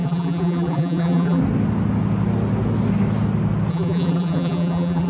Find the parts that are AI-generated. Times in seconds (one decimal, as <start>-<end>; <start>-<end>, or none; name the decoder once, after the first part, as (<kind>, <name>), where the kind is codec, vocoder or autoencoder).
0.0-1.4 (vocoder, BigVGAN v2); 3.7-5.1